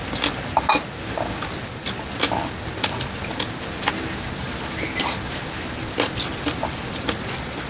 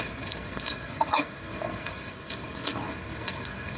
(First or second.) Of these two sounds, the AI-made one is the second